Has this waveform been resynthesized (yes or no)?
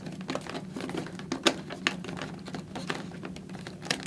no